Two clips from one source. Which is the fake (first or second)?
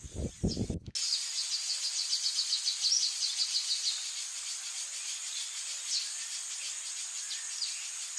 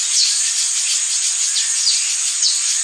second